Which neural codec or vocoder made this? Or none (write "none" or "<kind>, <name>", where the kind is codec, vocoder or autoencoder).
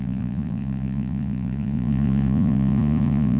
vocoder, Vocos